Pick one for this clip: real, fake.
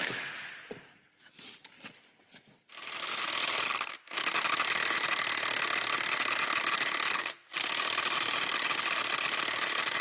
real